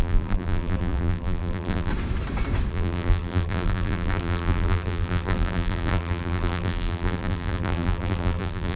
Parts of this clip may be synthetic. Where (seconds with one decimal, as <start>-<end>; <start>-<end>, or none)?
0.0-1.9; 2.7-8.8

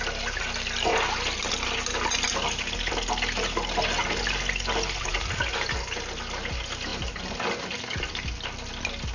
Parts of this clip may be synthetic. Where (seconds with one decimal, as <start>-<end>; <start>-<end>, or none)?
none

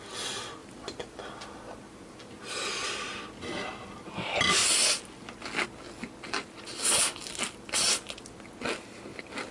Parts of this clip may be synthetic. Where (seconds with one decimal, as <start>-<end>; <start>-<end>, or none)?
0.6-4.1

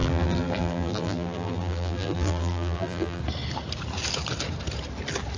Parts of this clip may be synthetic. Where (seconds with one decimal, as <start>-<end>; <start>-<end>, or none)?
0.0-3.2